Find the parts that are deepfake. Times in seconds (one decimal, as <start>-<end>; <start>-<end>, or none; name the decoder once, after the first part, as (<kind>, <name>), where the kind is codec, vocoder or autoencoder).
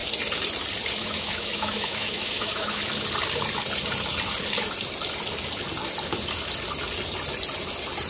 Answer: 1.0-2.8 (autoencoder, DAC-VAE)